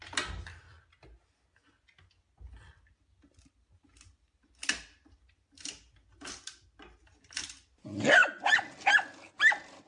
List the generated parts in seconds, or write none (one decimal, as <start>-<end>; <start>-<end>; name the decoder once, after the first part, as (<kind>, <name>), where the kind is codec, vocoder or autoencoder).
none